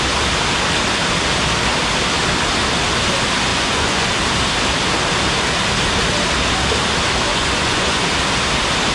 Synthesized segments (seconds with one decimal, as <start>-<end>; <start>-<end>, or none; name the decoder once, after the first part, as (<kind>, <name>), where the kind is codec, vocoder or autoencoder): 3.5-4.1 (vocoder, Vocos); 7.3-8.0